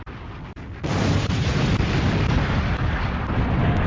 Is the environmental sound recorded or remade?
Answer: recorded